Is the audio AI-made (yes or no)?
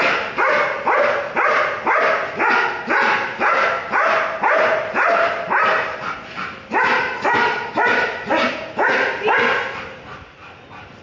no